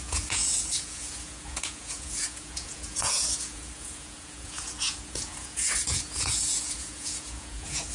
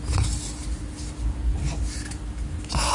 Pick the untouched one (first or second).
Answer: second